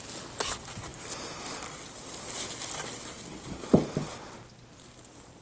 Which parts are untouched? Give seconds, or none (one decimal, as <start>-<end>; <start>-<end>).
0.0-5.4